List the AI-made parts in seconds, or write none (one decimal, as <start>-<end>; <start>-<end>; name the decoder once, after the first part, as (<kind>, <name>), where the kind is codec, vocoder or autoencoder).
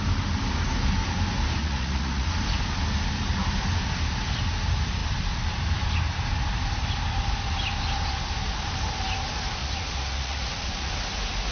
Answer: 1.6-2.3 (vocoder, Vocos); 9.6-10.9